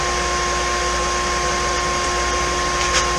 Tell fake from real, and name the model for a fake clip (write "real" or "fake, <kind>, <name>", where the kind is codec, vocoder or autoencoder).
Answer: real